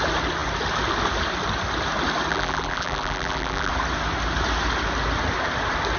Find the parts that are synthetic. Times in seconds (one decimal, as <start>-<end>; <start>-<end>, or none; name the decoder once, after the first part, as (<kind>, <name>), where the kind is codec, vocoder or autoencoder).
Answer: 2.3-3.7 (vocoder, BigVGAN v2)